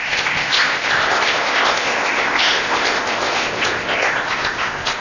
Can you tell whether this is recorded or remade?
remade